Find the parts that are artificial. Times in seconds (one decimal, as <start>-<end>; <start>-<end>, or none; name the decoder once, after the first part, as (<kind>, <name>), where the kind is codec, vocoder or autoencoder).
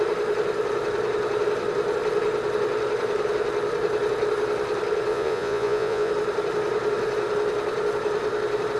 5.1-6.1 (vocoder, Vocos)